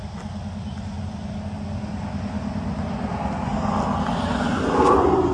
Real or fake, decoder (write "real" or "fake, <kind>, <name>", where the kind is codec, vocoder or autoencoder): real